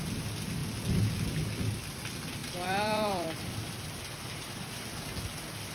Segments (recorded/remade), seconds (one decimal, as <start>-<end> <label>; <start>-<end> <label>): 0.0-2.4 recorded; 2.4-4.4 remade; 4.4-5.7 recorded